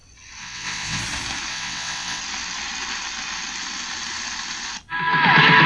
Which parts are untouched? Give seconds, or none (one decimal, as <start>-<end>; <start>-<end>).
0.0-0.4; 1.0-1.5; 2.2-5.7